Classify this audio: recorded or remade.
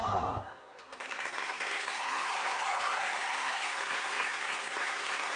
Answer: remade